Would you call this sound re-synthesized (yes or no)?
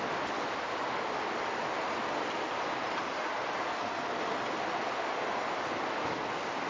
no